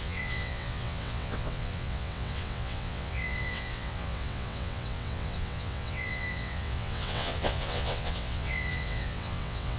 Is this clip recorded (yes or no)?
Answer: no